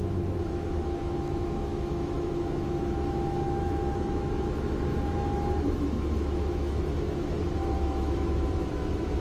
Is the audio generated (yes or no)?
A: yes